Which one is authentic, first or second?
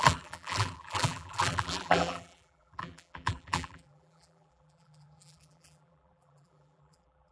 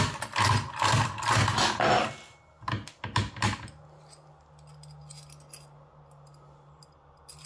second